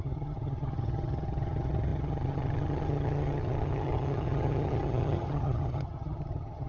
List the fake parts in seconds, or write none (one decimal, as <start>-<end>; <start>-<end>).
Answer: 0.0-6.7